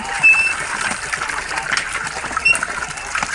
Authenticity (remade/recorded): remade